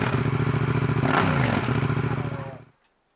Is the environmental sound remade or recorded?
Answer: recorded